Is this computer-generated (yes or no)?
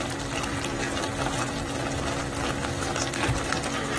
no